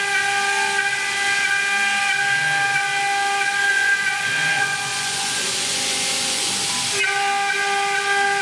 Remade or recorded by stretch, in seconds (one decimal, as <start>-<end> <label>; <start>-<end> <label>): 0.0-3.7 recorded; 3.7-6.5 remade; 6.5-8.4 recorded